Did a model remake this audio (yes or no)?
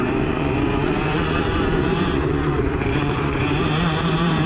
yes